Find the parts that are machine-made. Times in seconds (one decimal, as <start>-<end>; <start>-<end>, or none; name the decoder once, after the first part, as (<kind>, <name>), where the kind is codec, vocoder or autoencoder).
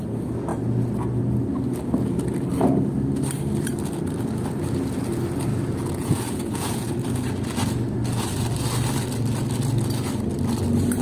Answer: 5.5-7.0 (vocoder, Vocos)